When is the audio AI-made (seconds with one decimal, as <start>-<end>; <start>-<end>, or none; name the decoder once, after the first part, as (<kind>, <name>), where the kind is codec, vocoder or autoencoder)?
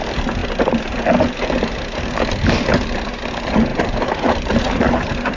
3.7-4.9 (vocoder, BigVGAN v2)